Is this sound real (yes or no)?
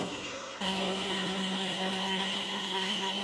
no